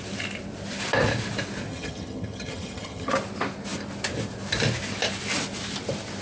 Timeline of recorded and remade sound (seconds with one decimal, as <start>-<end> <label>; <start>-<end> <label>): 0.0-1.7 recorded; 1.7-3.1 remade; 3.1-6.2 recorded